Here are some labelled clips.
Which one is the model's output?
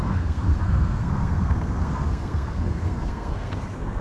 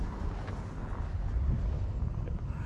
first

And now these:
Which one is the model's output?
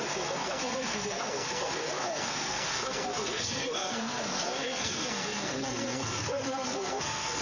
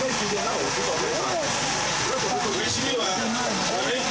first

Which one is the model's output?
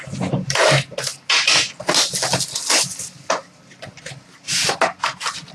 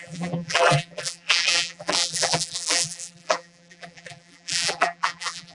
second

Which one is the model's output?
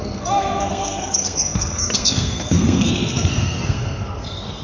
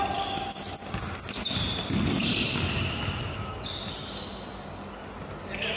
first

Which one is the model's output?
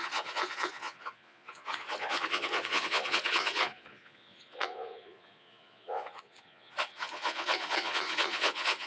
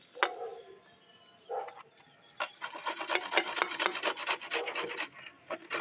first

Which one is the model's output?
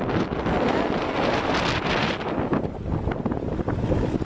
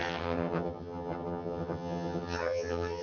second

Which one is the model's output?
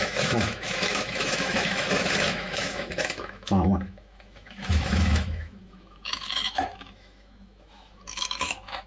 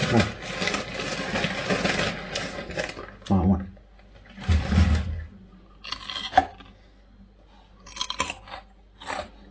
first